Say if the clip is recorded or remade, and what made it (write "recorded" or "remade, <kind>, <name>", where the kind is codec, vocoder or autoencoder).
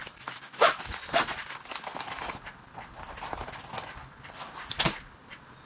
recorded